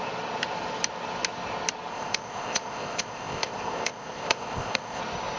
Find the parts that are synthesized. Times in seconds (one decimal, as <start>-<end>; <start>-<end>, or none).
1.9-5.0

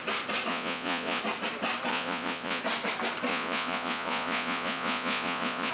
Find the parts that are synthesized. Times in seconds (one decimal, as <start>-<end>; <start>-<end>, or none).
0.5-1.2; 1.9-2.6; 3.3-5.7

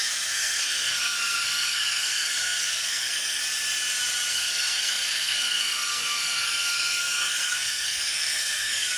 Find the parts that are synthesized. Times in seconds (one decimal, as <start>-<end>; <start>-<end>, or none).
0.0-3.4; 4.3-9.0

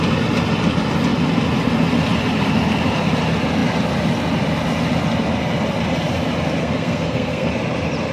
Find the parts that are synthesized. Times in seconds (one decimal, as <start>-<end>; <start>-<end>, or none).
6.6-7.5

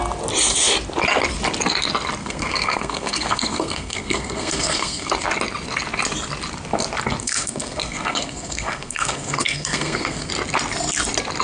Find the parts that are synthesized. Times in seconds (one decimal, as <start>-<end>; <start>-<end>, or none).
2.2-5.1; 7.2-10.3

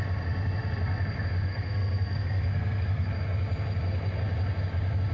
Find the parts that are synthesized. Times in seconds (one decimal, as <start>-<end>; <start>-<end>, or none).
1.5-3.1